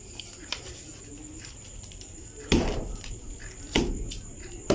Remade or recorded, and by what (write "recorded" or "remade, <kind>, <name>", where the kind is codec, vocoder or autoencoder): recorded